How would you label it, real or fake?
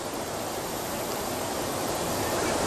fake